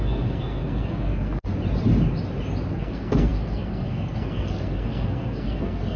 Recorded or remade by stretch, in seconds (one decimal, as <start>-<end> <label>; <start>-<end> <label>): 0.0-1.5 remade; 1.5-2.7 recorded; 2.7-6.0 remade